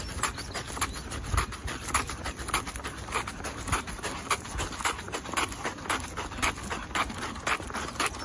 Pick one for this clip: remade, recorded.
recorded